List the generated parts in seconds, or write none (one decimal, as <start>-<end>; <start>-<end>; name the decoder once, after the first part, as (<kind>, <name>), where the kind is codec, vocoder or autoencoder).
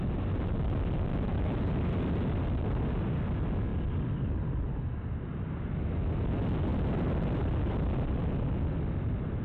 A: 1.1-1.6 (autoencoder, DAC-VAE)